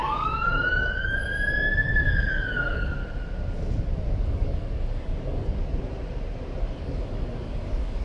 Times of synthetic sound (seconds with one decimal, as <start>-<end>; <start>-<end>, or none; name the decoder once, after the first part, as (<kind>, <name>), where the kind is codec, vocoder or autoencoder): 0.0-1.2 (codec, DAC); 1.8-3.0; 4.2-5.6; 6.6-8.0